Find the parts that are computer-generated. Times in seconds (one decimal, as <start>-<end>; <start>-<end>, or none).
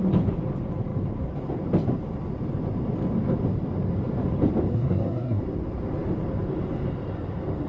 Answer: 4.7-5.4